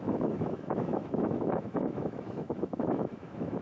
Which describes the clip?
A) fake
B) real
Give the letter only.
A